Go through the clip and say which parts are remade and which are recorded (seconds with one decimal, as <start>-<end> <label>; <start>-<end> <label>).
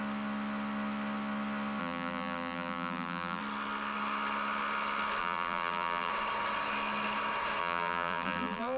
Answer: 0.0-1.8 recorded; 1.8-3.4 remade; 3.4-5.2 recorded; 5.2-6.1 remade; 6.1-7.6 recorded; 7.6-8.8 remade